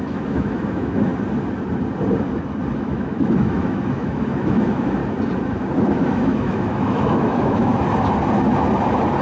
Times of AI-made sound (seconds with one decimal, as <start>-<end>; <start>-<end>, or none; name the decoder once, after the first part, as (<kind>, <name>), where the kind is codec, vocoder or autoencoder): 0.0-1.1 (autoencoder, DAC-VAE); 2.8-5.0; 5.9-7.7